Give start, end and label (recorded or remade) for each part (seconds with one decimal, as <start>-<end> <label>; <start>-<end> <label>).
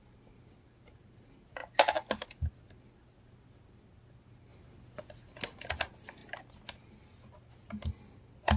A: 0.0-8.6 recorded